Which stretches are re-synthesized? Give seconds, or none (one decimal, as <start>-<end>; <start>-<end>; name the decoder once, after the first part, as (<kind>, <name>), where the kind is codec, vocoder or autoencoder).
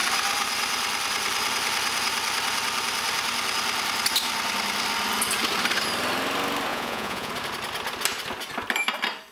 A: 6.7-7.3 (vocoder, Vocos)